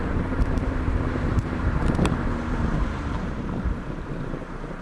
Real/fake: fake